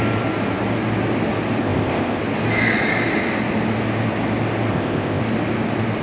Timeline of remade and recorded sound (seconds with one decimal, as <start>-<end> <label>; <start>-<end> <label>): 0.0-1.6 recorded; 1.6-2.2 remade; 2.2-4.7 recorded; 4.7-5.2 remade; 5.2-6.0 recorded